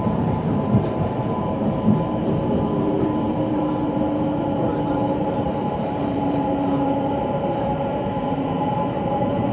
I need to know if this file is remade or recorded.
remade